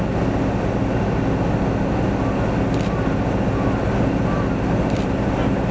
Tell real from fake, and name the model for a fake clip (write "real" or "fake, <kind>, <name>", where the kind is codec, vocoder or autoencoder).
real